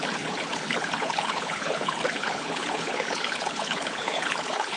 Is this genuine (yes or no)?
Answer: no